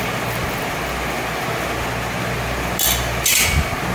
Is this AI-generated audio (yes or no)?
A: no